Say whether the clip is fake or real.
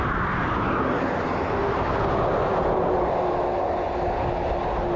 real